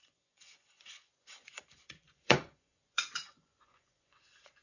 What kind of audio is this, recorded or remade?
remade